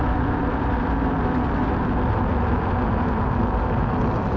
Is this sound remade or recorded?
recorded